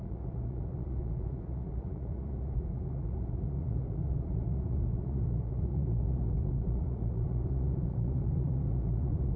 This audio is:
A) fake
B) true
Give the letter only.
A